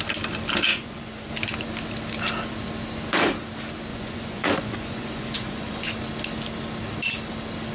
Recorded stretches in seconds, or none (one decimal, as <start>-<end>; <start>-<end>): 0.0-0.7; 1.3-3.9; 5.9-7.7